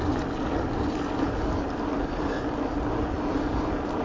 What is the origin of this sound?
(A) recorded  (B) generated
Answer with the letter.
A